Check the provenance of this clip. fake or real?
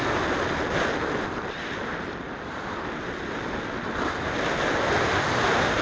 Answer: real